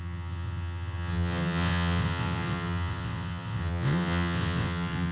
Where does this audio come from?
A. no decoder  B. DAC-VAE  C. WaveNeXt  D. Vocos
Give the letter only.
C